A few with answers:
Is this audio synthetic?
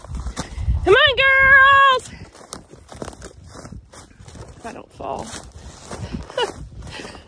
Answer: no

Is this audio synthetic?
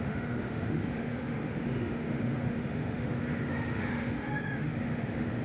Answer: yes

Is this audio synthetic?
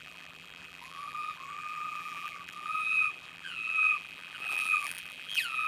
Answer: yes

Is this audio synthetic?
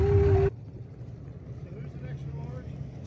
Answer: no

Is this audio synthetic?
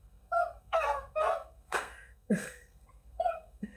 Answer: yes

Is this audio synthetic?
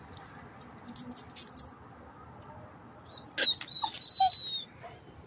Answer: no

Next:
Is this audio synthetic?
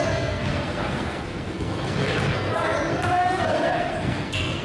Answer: yes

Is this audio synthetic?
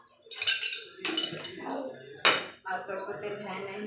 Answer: no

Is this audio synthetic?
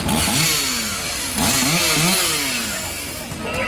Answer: no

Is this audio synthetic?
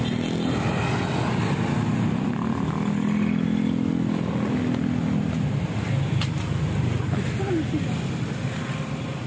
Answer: no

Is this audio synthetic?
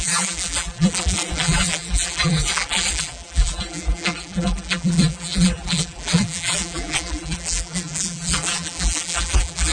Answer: yes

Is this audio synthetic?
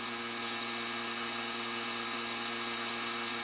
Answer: no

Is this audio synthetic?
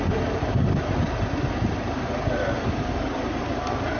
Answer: no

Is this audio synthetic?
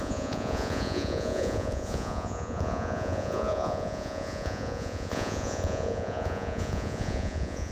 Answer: yes